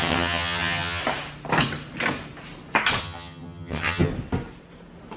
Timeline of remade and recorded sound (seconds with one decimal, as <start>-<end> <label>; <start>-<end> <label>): 0.0-1.0 remade; 1.0-3.0 recorded; 3.0-4.1 remade; 4.1-5.2 recorded